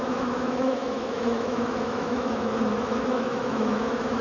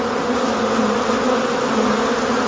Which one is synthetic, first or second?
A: first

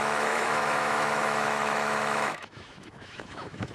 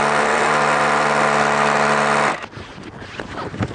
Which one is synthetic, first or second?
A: first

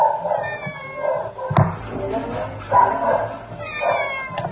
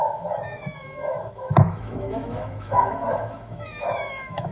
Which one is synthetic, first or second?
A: second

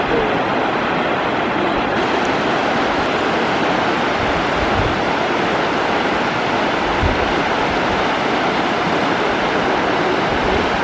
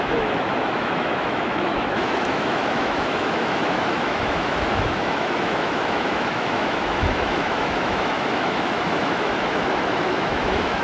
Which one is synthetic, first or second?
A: second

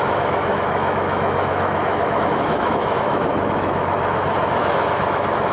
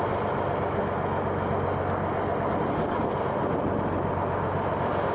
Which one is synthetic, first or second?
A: first